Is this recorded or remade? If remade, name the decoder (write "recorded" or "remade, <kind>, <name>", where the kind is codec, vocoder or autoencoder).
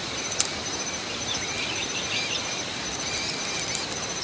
recorded